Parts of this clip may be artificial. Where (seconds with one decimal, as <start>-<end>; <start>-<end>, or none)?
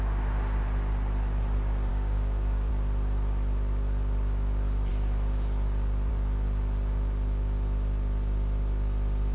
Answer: 1.9-2.7